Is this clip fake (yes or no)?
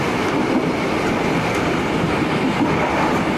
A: yes